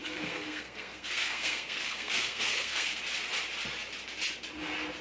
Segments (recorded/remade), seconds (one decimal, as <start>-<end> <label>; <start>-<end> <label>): 0.0-3.0 remade; 3.0-5.0 recorded